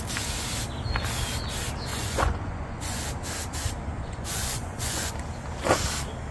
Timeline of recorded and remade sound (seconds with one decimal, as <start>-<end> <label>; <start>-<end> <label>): 0.0-1.9 recorded; 1.9-3.0 remade; 3.0-3.9 recorded; 3.9-5.1 remade; 5.1-6.3 recorded